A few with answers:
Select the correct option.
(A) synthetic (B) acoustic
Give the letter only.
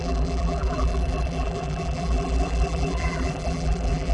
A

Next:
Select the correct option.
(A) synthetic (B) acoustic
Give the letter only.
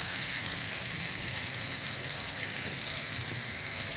A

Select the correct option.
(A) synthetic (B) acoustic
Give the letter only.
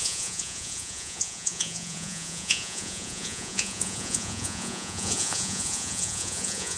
A